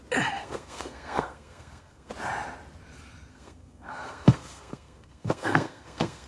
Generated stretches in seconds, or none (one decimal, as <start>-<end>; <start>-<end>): 0.4-2.1; 3.3-6.3